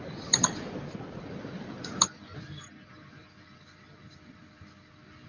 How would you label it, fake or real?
fake